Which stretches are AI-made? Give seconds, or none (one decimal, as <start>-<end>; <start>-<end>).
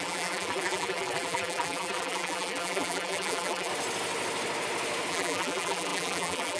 0.0-3.7; 5.1-6.6